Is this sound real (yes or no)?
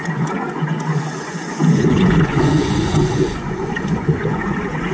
no